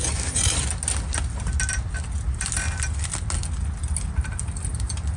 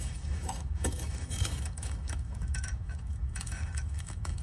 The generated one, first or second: second